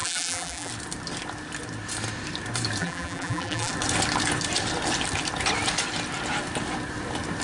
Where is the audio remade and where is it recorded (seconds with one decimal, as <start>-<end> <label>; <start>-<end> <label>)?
0.0-0.7 remade; 0.7-2.8 recorded; 2.8-3.7 remade; 3.7-7.4 recorded